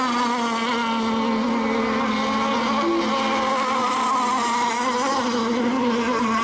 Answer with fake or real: real